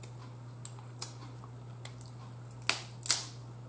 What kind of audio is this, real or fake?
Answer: real